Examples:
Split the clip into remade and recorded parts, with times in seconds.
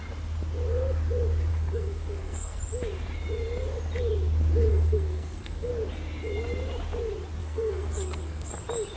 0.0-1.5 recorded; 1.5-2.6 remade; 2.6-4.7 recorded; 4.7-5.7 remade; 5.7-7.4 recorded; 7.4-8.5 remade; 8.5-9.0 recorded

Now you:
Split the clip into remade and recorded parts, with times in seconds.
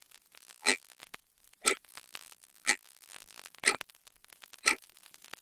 0.0-0.4 recorded; 0.4-1.0 remade; 1.0-1.9 recorded; 1.9-3.5 remade; 3.5-5.4 recorded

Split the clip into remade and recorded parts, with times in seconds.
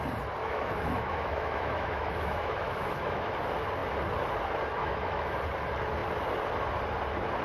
0.0-0.4 recorded; 0.4-3.3 remade; 3.3-4.8 recorded; 4.8-5.4 remade; 5.4-7.4 recorded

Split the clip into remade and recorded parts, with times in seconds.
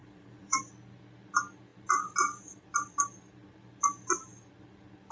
0.0-0.7 remade; 0.7-5.1 recorded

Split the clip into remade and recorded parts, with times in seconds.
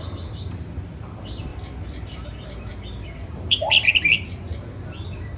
0.0-3.6 remade; 3.6-5.4 recorded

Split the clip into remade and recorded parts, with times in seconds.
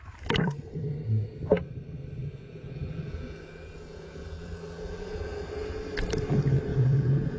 0.0-2.2 recorded; 2.2-5.8 remade; 5.8-6.7 recorded; 6.7-7.4 remade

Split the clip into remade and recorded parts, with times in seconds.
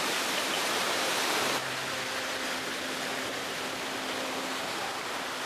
0.0-1.6 remade; 1.6-4.9 recorded; 4.9-5.5 remade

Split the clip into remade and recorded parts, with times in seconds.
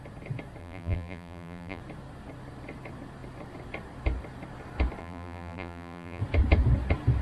0.0-0.6 recorded; 0.6-1.8 remade; 1.8-5.0 recorded; 5.0-6.2 remade; 6.2-7.2 recorded